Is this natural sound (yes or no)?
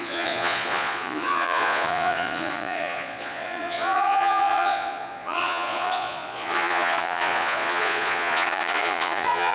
no